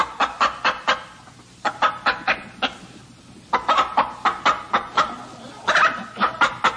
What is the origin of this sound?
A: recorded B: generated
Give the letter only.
A